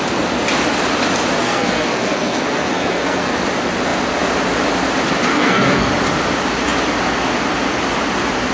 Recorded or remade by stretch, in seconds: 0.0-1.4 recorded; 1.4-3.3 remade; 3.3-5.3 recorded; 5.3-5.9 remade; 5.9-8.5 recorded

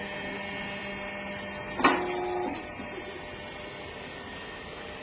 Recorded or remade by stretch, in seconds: 0.0-5.0 recorded

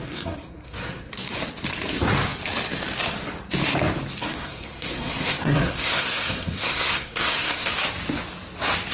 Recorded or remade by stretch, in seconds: 0.0-1.1 remade; 1.1-4.2 recorded; 4.2-7.7 remade; 7.7-8.9 recorded

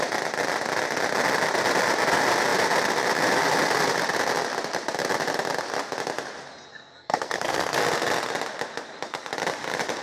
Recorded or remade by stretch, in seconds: 0.0-6.7 recorded; 6.7-7.8 remade; 7.8-10.0 recorded

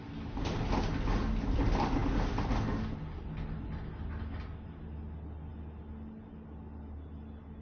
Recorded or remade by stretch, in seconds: 0.0-7.6 recorded

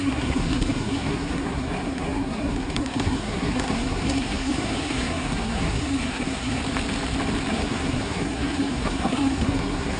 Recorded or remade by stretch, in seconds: 0.0-6.6 remade; 6.6-7.5 recorded; 7.5-10.0 remade

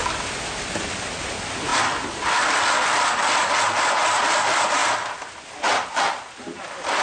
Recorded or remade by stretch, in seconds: 0.0-7.0 recorded

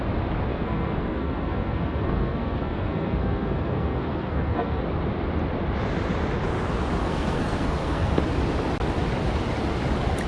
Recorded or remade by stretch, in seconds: 0.0-0.5 recorded; 0.5-4.8 remade; 4.8-7.0 recorded; 7.0-8.2 remade; 8.2-10.3 recorded